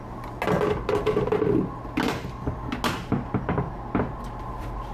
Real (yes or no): yes